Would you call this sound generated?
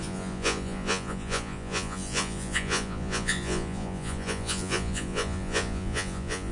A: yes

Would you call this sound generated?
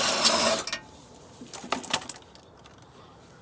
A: no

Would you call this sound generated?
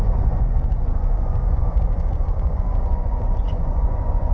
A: yes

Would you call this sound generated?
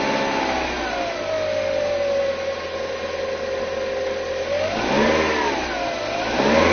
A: no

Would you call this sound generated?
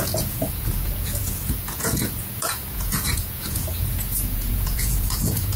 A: yes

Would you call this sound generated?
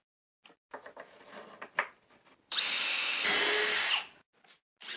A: no